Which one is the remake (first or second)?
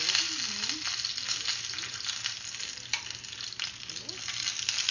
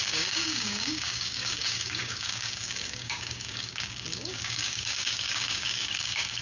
second